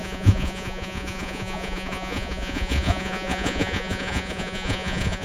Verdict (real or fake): fake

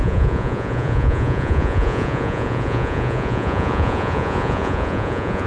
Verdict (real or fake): fake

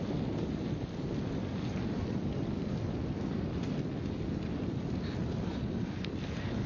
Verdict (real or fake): real